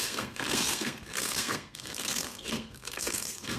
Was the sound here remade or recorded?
remade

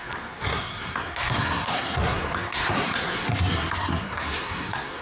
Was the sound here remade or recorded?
remade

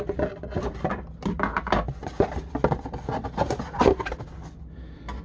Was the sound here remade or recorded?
recorded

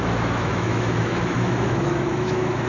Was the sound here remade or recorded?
remade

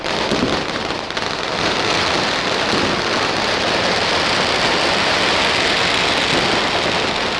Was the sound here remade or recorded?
recorded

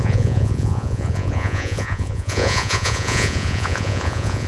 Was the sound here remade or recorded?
remade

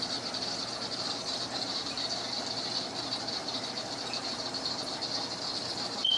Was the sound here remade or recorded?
remade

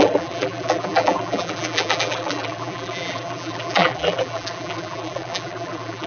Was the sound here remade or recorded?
remade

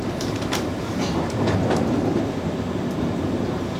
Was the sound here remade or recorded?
recorded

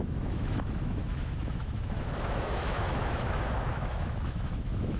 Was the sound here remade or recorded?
remade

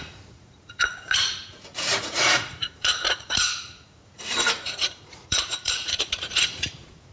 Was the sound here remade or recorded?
remade